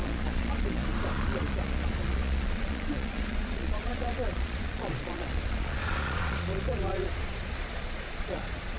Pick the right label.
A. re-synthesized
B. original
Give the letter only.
A